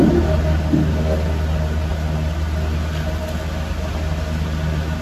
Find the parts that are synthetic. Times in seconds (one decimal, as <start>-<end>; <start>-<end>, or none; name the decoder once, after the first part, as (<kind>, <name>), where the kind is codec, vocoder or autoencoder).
none